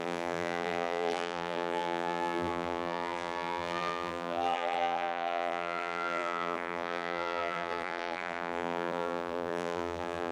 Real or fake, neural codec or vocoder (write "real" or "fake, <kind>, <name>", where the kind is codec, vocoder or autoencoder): fake, vocoder, BigVGAN v2